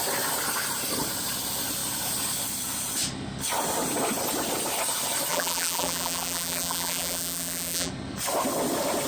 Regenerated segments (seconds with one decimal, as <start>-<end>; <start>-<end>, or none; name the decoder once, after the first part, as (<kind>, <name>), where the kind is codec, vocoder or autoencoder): 5.3-7.9 (vocoder, BigVGAN v2)